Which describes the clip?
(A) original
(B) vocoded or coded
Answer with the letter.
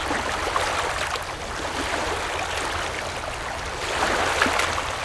A